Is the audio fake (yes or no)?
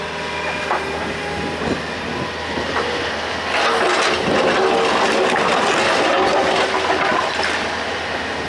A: no